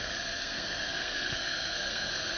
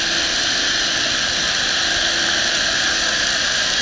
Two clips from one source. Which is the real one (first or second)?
second